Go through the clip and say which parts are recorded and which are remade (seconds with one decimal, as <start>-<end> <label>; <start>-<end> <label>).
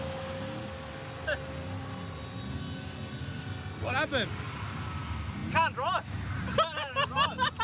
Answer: 0.0-7.6 recorded